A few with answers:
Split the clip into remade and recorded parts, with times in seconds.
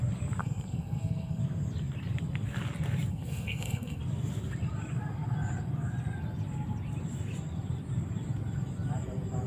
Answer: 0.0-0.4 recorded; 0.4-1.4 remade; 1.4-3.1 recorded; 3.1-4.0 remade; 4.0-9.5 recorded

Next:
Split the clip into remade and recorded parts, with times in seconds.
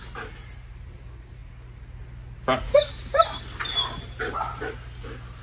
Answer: 0.0-5.4 recorded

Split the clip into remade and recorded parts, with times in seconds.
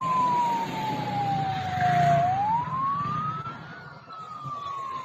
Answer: 0.0-5.0 recorded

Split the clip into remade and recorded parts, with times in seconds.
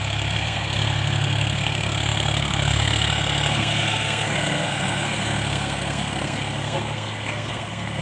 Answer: 0.0-8.0 remade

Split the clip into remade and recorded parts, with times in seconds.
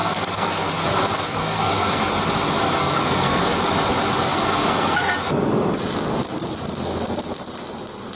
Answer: 0.0-0.7 remade; 0.7-1.4 recorded; 1.4-2.0 remade; 2.0-2.8 recorded; 2.8-3.4 remade; 3.4-4.3 recorded; 4.3-5.1 remade; 5.1-8.2 recorded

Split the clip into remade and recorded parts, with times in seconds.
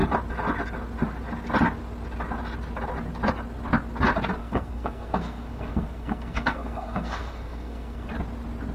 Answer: 0.0-4.4 recorded; 4.4-8.1 remade; 8.1-8.7 recorded